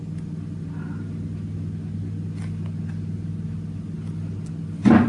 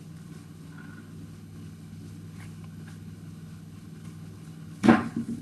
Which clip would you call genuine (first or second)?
first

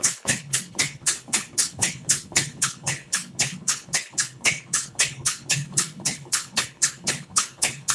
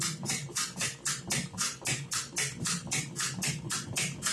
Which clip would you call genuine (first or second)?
second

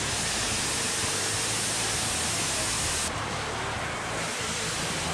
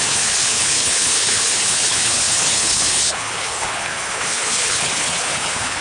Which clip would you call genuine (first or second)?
first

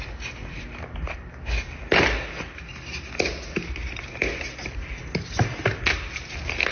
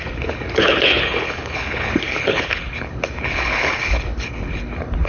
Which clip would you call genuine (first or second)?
first